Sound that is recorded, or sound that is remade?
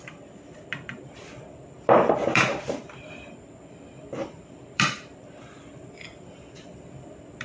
remade